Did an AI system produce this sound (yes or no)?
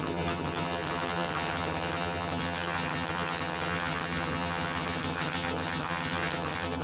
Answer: yes